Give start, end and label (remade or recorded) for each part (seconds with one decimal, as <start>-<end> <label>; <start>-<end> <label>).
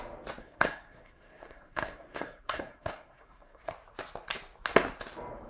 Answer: 0.0-0.4 recorded; 0.4-3.7 remade; 3.7-5.5 recorded